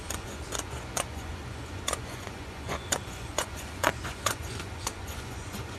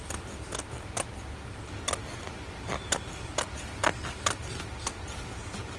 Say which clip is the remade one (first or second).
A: first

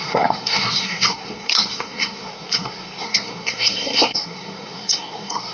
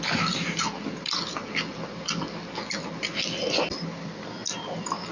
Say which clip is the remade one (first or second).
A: first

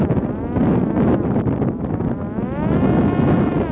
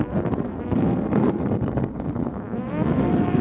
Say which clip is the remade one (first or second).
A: second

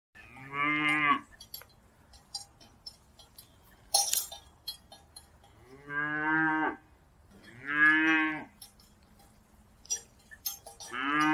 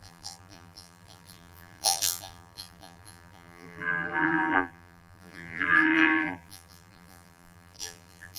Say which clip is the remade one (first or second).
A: second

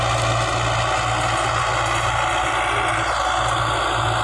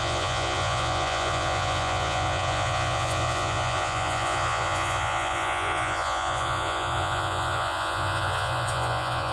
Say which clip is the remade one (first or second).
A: second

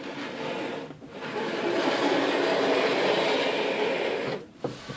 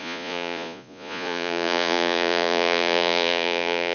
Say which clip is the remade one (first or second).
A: second